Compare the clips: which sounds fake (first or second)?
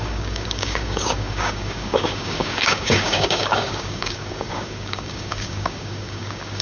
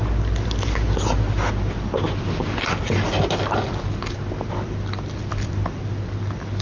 first